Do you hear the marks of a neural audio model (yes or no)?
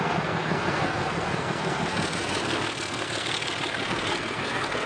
yes